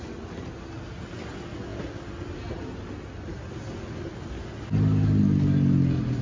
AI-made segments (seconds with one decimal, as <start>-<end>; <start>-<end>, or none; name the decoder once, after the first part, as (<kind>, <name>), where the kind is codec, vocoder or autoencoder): none

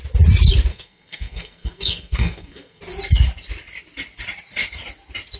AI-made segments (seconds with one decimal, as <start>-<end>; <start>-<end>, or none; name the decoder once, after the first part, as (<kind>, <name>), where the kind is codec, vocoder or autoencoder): 0.7-2.8 (codec, SNAC)

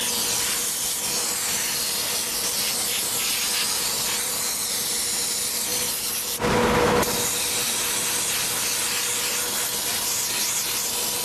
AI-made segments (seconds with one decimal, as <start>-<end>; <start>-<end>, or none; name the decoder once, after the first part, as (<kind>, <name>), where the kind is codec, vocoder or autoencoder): 5.7-6.4 (vocoder, BigVGAN v2)

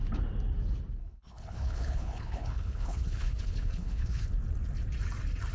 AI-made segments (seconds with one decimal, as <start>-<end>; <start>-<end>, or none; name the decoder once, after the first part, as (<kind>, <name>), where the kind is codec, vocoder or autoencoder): 1.0-4.3 (codec, HILCodec)

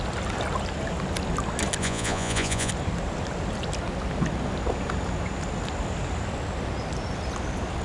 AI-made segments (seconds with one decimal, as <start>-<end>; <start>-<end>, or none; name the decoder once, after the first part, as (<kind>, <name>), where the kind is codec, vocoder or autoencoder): 1.8-2.7 (vocoder, Vocos)

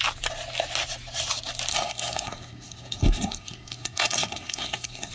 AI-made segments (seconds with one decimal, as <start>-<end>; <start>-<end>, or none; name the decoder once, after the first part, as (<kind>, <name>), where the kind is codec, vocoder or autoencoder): 1.7-5.1 (codec, SNAC)

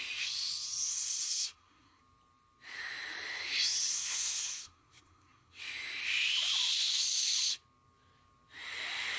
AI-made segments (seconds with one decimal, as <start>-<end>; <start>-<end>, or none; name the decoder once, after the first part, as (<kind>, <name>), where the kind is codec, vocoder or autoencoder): 0.9-2.0 (codec, SNAC); 3.9-5.6